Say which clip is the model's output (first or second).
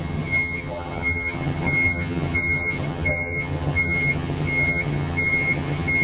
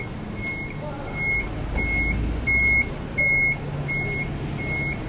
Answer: first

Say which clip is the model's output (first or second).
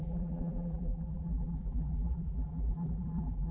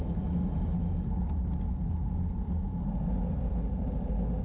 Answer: first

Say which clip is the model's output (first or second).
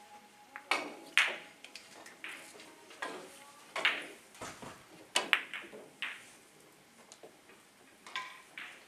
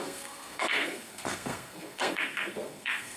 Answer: second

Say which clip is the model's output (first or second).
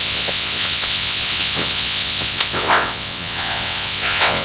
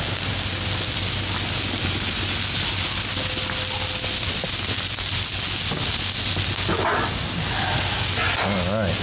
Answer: first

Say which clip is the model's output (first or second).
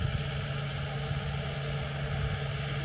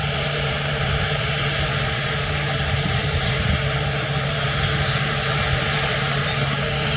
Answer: second